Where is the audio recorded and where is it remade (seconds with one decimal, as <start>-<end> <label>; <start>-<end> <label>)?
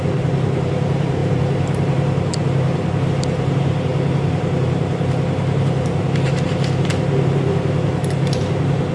0.0-8.9 remade